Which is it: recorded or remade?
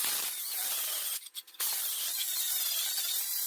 recorded